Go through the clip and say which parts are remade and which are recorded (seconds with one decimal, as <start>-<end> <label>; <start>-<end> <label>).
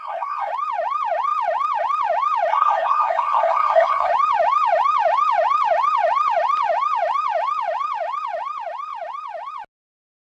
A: 0.0-0.5 remade; 0.5-2.5 recorded; 2.5-4.1 remade; 4.1-10.2 recorded